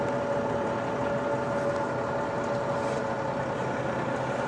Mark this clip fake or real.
real